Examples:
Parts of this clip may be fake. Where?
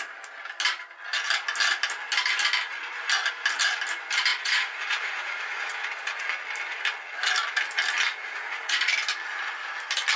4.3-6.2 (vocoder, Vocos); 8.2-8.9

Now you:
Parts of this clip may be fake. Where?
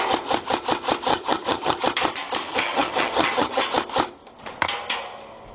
1.1-1.8 (vocoder, HiFi-GAN); 2.5-3.6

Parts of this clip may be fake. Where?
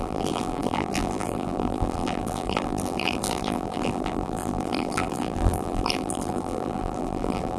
0.0-7.6 (vocoder, BigVGAN v2)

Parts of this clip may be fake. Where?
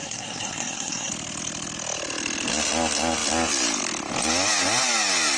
0.0-1.1 (codec, SNAC)